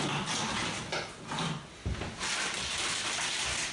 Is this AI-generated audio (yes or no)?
no